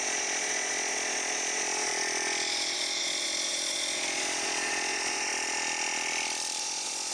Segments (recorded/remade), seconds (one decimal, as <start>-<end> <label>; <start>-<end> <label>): 0.0-1.9 remade; 1.9-2.5 recorded; 2.5-5.3 remade; 5.3-6.6 recorded; 6.6-7.1 remade